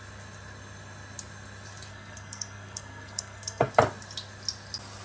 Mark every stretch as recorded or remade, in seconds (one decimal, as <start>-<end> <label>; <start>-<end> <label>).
0.0-1.9 recorded; 1.9-3.7 remade; 3.7-5.0 recorded